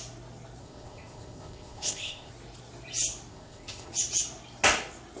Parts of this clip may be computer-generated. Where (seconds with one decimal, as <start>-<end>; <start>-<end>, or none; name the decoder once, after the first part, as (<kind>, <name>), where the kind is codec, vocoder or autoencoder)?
0.6-2.3 (codec, ZipCodec); 3.3-3.9

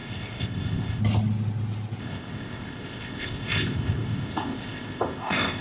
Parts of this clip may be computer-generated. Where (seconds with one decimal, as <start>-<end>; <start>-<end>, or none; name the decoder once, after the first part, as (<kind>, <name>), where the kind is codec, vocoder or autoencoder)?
0.0-1.0 (codec, ZipCodec); 2.0-5.6

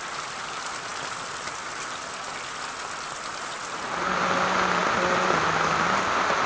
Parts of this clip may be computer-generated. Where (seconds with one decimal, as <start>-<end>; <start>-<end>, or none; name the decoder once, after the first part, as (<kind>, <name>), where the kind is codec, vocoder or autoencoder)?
none

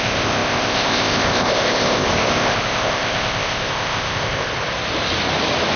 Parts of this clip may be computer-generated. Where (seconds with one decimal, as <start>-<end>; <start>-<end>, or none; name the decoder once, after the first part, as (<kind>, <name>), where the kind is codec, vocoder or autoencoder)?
0.0-4.5 (codec, ZipCodec)